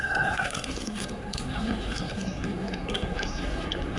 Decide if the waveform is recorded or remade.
remade